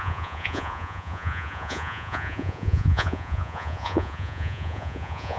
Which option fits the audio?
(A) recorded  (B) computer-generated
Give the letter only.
B